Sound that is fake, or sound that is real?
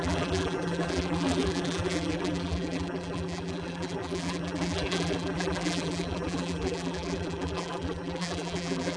fake